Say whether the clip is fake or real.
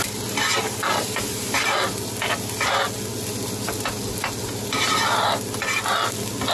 real